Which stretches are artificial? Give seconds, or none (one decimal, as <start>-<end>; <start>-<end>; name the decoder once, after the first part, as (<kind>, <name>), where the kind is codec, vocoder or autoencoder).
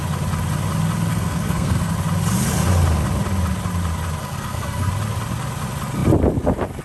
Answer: 1.1-1.9 (codec, SNAC); 4.2-4.9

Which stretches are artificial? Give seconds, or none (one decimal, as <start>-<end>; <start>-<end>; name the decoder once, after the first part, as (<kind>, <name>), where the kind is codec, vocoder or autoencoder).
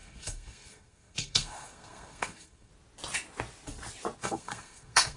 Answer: 0.0-2.7 (codec, SNAC); 4.2-5.2